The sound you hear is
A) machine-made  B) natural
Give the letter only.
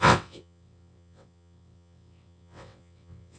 A